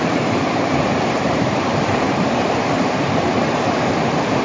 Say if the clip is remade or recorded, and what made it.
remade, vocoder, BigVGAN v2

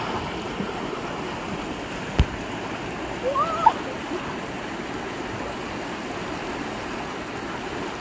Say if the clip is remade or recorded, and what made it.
recorded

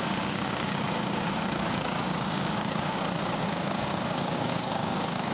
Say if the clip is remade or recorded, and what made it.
remade, codec, DAC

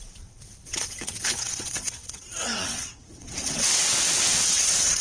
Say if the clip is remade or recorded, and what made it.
remade, vocoder, WaveNeXt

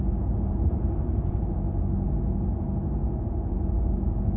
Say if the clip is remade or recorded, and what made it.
recorded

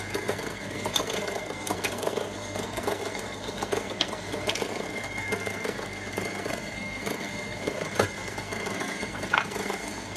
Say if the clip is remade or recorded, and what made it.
remade, codec, SNAC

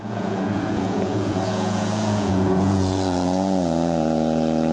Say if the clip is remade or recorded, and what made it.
remade, vocoder, Vocos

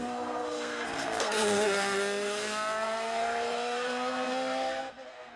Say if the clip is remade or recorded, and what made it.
remade, codec, SNAC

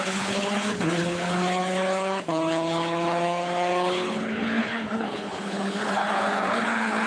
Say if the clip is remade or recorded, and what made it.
remade, codec, HILCodec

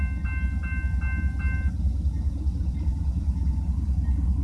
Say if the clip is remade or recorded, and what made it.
recorded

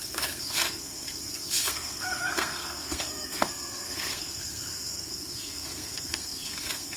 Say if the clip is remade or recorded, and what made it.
remade, codec, SNAC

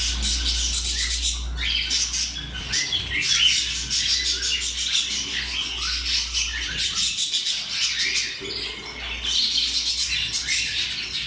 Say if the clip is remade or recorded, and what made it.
recorded